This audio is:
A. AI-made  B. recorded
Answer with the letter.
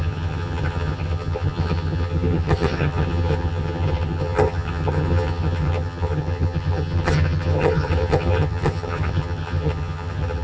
A